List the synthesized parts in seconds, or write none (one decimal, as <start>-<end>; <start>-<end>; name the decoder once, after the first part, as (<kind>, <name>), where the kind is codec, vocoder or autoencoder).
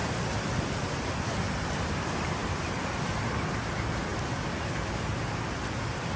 1.0-6.2 (vocoder, BigVGAN v2)